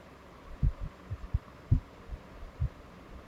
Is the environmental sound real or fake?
real